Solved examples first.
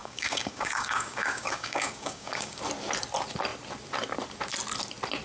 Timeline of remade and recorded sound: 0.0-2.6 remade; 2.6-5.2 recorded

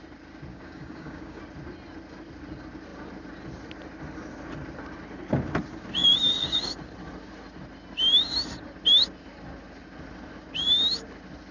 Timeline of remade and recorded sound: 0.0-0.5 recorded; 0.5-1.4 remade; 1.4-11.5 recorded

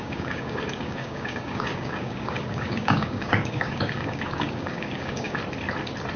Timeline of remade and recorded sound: 0.0-5.4 remade; 5.4-6.2 recorded